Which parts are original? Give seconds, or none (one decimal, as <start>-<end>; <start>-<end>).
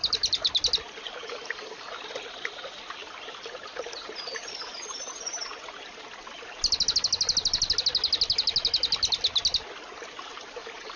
0.5-11.0